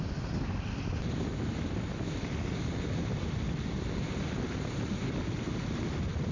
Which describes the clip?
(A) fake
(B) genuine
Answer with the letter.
B